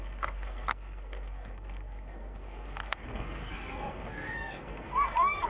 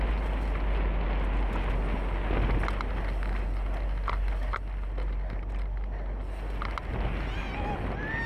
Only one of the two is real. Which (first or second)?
second